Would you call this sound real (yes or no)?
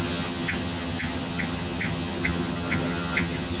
no